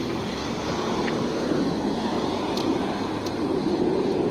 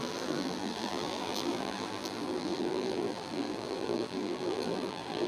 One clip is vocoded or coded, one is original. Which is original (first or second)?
first